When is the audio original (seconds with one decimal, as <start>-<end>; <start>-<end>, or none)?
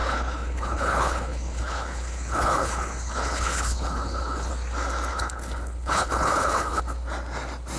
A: 4.5-5.1; 6.8-7.8